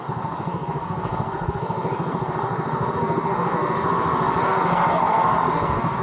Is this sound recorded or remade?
remade